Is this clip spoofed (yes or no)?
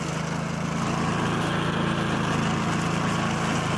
no